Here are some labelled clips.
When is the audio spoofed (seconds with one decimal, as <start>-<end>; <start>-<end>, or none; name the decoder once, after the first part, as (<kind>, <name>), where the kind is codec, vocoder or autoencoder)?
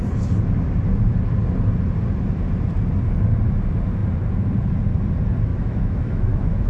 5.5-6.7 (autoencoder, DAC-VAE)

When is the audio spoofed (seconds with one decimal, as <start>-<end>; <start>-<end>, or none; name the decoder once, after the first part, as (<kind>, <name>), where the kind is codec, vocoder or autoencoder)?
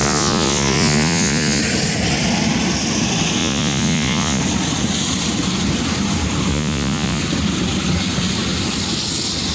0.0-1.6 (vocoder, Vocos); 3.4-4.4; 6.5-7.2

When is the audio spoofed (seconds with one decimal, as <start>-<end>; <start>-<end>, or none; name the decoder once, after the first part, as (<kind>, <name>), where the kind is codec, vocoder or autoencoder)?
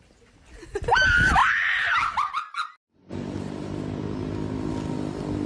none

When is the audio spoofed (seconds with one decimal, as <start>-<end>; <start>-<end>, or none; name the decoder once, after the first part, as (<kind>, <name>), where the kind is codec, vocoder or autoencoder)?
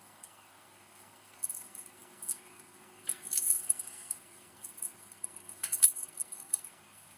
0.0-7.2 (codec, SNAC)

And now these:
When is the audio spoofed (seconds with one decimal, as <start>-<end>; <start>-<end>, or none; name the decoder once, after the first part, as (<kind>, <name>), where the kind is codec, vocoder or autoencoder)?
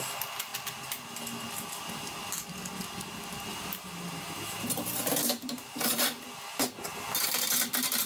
3.5-6.2 (vocoder, BigVGAN v2); 6.9-8.1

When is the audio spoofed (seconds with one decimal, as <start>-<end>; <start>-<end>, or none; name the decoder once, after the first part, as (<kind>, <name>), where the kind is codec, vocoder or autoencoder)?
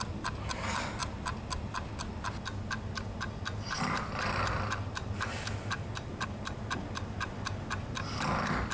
none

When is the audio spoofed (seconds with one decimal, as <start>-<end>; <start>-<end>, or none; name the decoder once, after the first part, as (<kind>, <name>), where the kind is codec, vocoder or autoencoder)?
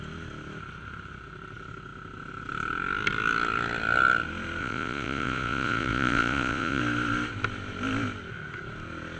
4.6-6.8 (vocoder, Vocos)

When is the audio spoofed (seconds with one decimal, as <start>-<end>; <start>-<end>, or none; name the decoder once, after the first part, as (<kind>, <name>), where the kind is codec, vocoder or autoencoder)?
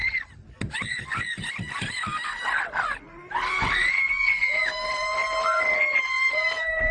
none